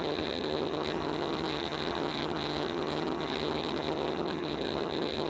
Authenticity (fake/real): fake